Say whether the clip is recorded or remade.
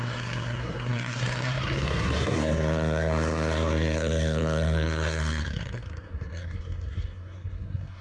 remade